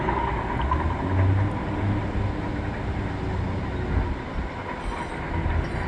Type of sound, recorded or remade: recorded